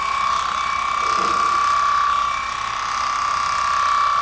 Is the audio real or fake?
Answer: real